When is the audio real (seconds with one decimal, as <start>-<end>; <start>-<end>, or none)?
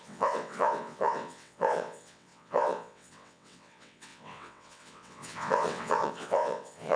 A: none